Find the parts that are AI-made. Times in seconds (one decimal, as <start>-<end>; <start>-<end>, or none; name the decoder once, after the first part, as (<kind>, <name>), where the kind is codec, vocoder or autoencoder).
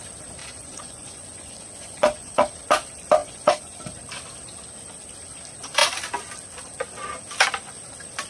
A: 0.4-2.5 (vocoder, Vocos); 3.2-3.8